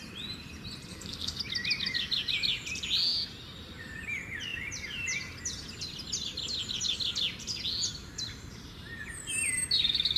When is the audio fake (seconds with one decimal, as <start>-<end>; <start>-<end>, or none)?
0.9-1.4